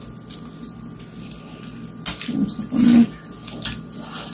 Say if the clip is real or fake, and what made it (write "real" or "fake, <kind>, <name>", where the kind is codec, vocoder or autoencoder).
real